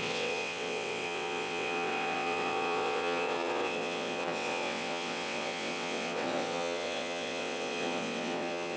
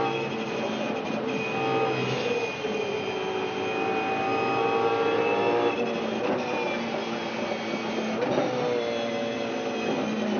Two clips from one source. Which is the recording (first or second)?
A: second